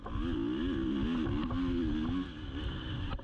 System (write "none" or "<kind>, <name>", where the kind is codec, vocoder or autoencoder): none